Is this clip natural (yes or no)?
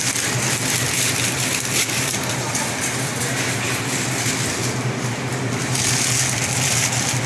yes